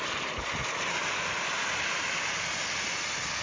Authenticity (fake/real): real